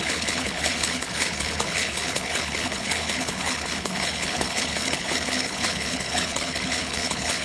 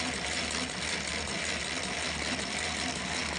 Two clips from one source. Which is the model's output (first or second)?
first